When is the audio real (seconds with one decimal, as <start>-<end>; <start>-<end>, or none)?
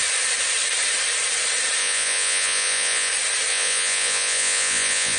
0.0-1.8; 3.1-3.5